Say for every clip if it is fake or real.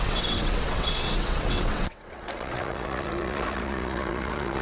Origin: fake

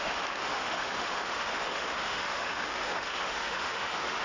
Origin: fake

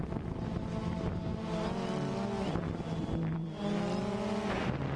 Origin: real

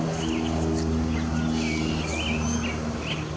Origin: real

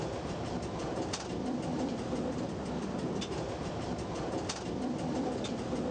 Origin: real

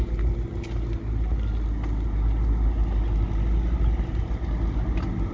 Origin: real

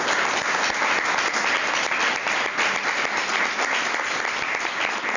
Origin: real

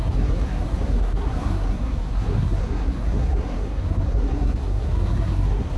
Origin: fake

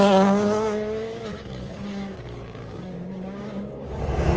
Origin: fake